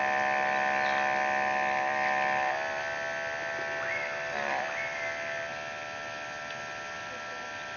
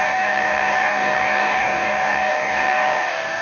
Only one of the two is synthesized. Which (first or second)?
second